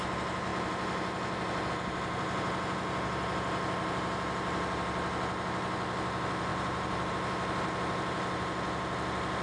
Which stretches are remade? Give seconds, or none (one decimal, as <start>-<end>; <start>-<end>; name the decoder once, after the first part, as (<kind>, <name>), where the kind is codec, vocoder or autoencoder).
6.5-7.1 (vocoder, BigVGAN v2)